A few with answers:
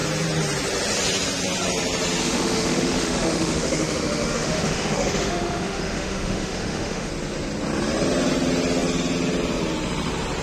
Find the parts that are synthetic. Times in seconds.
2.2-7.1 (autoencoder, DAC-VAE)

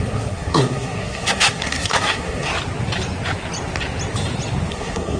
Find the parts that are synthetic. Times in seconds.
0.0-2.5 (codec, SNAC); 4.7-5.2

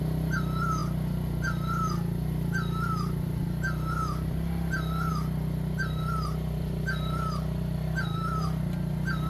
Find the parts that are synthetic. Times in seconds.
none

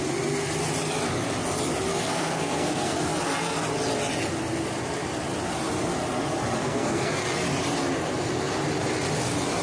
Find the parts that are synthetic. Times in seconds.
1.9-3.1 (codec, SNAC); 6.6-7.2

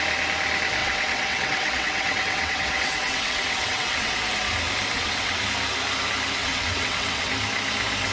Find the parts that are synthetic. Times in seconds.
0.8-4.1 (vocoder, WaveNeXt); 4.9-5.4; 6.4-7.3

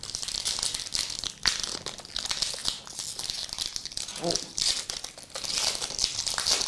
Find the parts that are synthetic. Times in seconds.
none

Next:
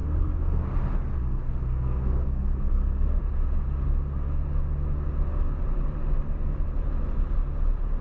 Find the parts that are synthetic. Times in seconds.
0.0-0.7 (codec, SNAC); 1.1-3.2

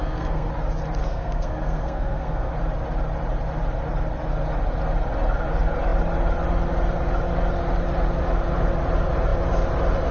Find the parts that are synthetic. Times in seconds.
0.0-0.5 (codec, SNAC); 1.0-2.5